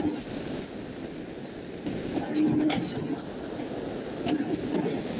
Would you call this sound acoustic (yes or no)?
yes